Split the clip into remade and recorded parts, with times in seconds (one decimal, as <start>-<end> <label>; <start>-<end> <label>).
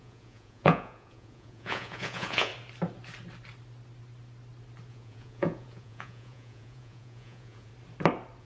0.0-2.5 remade; 2.5-4.9 recorded; 4.9-7.7 remade; 7.7-8.4 recorded